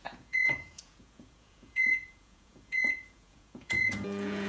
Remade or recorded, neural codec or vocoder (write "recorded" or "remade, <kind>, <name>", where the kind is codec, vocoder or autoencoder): remade, vocoder, Vocos